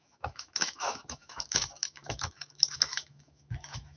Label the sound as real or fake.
fake